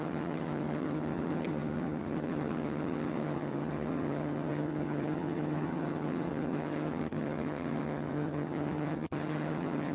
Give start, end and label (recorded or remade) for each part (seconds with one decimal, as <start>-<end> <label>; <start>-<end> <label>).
0.0-9.9 remade